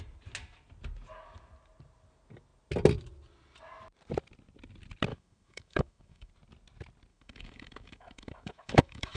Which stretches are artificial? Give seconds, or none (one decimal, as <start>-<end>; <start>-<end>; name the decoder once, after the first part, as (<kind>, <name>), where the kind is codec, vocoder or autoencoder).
5.1-6.3 (autoencoder, DAC-VAE); 7.1-9.2